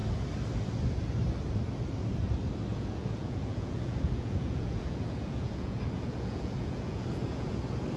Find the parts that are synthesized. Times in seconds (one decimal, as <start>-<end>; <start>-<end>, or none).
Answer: 2.7-7.5

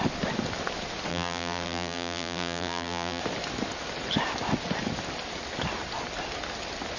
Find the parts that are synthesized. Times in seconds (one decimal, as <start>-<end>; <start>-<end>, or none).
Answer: 1.1-3.2

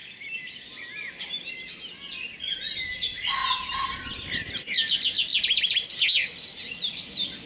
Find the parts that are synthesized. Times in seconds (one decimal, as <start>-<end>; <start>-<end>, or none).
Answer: none